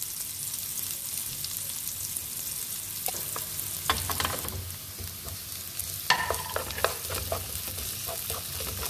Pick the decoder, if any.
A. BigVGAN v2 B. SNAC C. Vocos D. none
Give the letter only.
D